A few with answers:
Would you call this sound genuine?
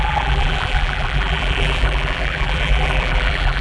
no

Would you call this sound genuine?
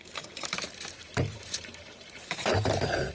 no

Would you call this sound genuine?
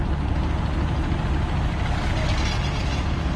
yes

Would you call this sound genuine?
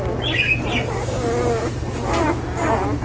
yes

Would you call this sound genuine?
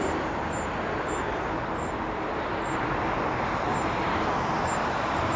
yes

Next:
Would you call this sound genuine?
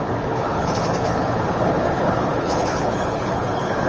no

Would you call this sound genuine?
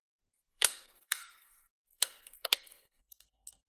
no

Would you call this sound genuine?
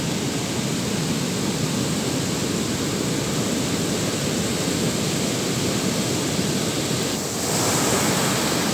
yes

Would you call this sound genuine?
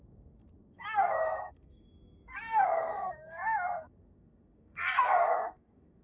no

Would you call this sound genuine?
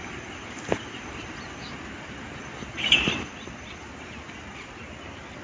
yes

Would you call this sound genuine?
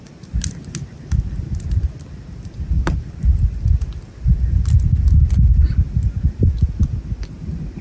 yes